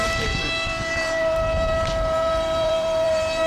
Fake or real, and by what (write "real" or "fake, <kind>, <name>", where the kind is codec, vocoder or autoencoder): fake, vocoder, BigVGAN v2